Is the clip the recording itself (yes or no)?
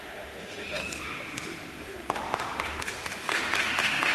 no